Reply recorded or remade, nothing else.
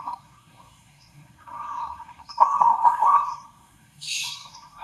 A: remade